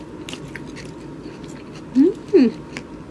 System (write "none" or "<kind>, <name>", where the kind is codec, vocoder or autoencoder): none